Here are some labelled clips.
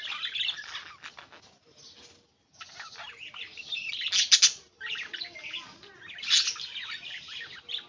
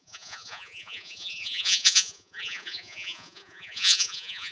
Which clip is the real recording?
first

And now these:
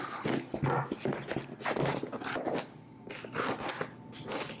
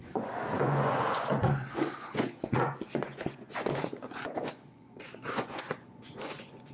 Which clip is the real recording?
first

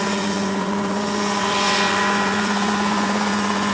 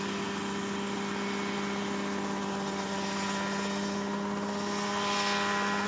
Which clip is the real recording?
second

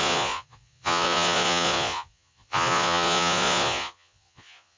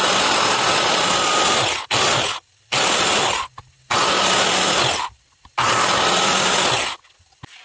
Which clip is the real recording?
second